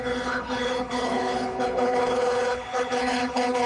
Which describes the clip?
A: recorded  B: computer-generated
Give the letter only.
B